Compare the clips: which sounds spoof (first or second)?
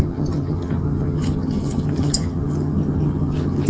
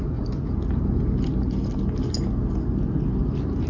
first